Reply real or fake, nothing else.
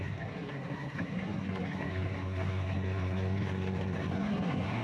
fake